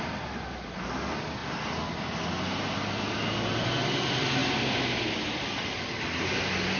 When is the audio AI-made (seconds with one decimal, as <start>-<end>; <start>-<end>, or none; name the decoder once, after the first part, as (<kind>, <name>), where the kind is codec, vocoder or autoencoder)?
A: none